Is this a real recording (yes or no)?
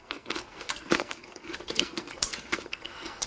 no